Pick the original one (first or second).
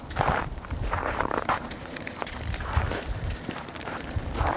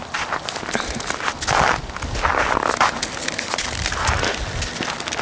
second